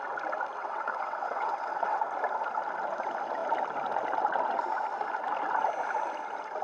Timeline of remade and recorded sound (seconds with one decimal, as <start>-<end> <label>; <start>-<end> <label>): 0.0-0.6 recorded; 0.6-2.0 remade; 2.0-6.6 recorded

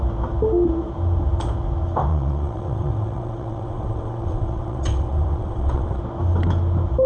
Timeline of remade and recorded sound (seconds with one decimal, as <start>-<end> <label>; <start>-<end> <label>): 0.0-2.1 recorded; 2.1-6.0 remade; 6.0-7.1 recorded

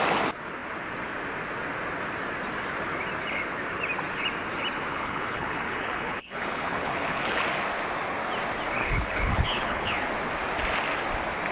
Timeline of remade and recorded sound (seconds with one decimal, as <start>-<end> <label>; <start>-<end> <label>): 0.0-4.9 recorded; 4.9-7.4 remade; 7.4-8.8 recorded; 8.8-10.0 remade; 10.0-11.5 recorded

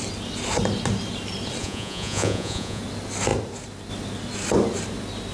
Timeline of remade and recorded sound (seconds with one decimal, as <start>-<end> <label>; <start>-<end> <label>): 0.0-1.6 recorded; 1.6-2.8 remade; 2.8-5.3 recorded

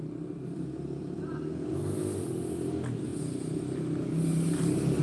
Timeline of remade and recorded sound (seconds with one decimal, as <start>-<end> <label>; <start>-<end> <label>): 0.0-5.0 recorded

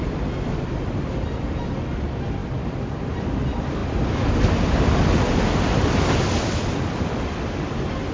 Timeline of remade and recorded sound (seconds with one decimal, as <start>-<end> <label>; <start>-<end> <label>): 0.0-8.1 recorded